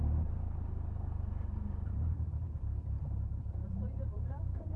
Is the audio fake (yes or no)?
yes